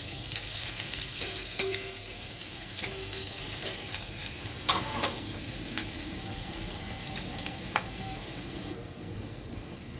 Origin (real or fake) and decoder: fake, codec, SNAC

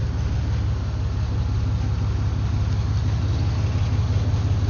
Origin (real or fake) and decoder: real